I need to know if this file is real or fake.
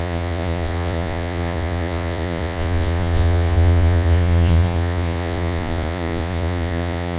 fake